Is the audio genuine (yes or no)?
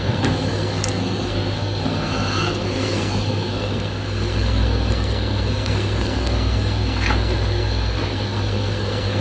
no